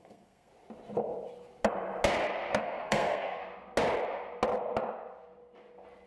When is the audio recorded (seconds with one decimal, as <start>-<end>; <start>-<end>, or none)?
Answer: 0.5-2.6; 3.4-6.1